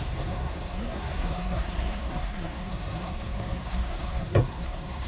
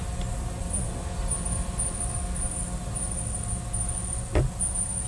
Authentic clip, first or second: second